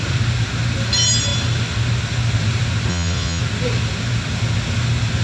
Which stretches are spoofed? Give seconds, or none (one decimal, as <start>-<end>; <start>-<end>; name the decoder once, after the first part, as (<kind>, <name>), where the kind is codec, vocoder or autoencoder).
2.9-3.4 (vocoder, Vocos)